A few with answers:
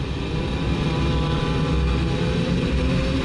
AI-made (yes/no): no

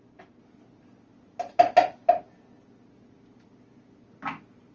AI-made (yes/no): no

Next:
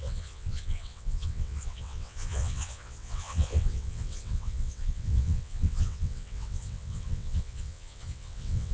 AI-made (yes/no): yes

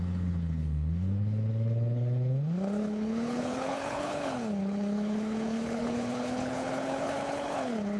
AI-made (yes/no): yes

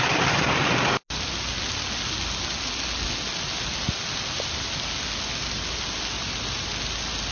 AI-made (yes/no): no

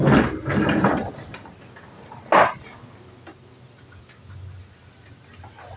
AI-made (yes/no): no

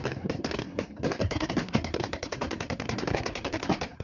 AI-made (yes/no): yes